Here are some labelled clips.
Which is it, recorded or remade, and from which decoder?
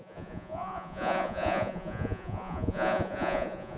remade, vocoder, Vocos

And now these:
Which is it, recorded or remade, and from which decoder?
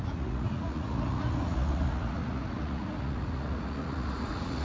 remade, vocoder, Vocos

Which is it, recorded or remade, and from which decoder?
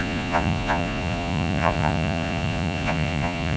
remade, vocoder, Vocos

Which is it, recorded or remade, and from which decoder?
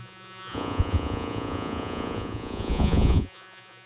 remade, vocoder, Vocos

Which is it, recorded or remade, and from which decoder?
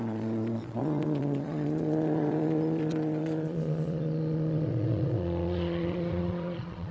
remade, vocoder, Vocos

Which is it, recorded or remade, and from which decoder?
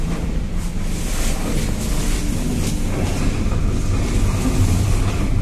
recorded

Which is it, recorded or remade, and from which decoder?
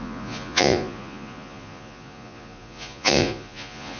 remade, vocoder, Vocos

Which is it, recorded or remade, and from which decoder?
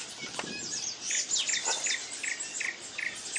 recorded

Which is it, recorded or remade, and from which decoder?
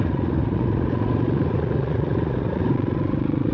remade, vocoder, Vocos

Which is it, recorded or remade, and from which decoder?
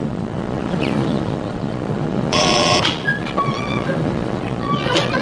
remade, vocoder, Vocos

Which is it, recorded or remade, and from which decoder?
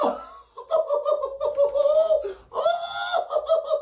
recorded